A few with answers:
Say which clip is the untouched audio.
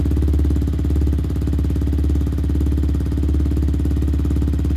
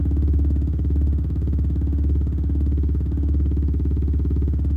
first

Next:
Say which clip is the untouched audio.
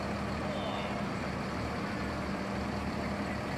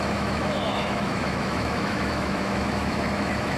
first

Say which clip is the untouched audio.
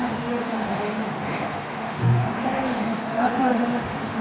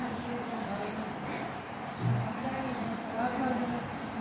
second